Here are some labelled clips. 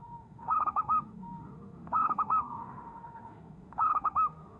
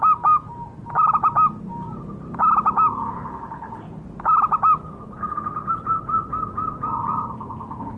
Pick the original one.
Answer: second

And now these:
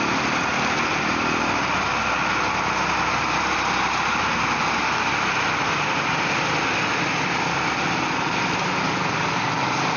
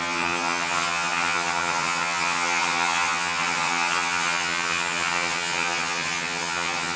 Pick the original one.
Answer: first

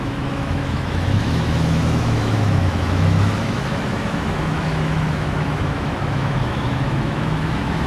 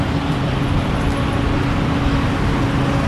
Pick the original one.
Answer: second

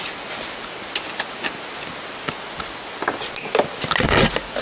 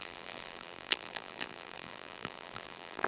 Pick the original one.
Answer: first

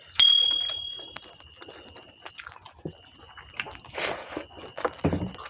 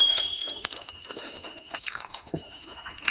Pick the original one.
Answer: first